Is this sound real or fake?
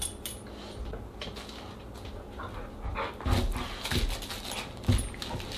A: real